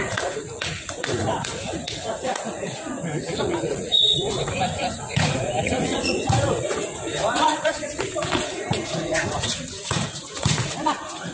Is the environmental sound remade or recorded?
remade